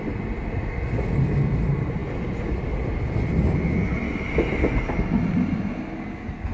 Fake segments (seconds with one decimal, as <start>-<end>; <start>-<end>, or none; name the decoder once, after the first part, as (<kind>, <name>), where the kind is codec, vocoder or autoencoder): none